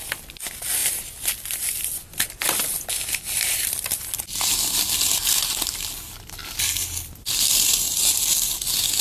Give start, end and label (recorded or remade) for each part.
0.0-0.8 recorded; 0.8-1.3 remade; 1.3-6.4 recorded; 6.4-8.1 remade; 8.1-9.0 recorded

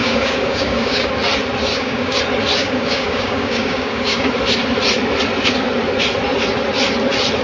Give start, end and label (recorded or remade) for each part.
0.0-1.1 remade; 1.1-1.7 recorded; 1.7-2.2 remade; 2.2-2.6 recorded; 2.6-4.3 remade; 4.3-7.4 recorded